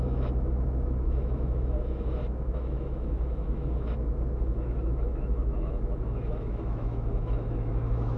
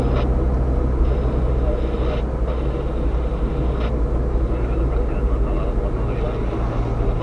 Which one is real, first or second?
second